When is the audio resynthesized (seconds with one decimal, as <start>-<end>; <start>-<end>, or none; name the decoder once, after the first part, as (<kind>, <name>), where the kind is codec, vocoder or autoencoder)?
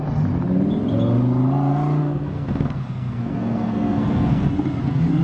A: 2.0-5.2 (codec, SNAC)